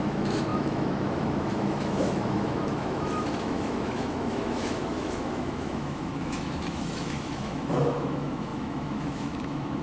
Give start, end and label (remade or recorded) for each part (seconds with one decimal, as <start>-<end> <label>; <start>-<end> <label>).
0.0-9.8 remade